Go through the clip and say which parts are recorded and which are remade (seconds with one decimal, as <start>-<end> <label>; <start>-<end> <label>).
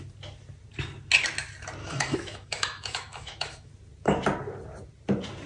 0.0-1.8 recorded; 1.8-3.7 remade; 3.7-5.5 recorded